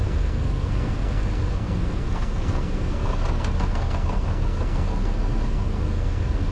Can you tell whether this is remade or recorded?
remade